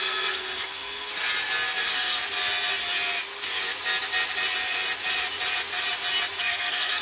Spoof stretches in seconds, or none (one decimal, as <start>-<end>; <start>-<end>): 0.0-1.1; 1.8-2.2; 6.4-7.0